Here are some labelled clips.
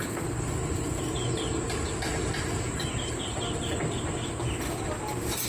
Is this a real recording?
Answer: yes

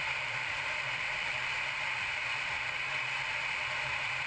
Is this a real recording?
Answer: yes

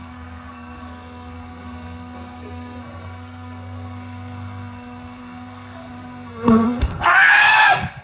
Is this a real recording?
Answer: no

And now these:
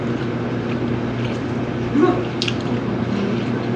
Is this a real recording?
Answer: yes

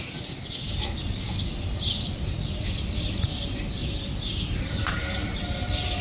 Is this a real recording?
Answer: yes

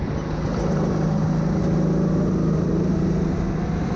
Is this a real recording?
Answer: yes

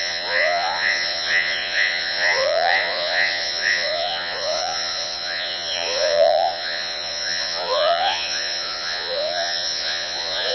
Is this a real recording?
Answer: no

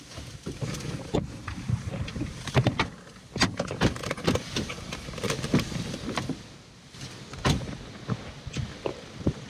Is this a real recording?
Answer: yes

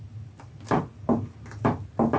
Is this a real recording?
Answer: yes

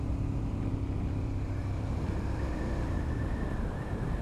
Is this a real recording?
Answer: no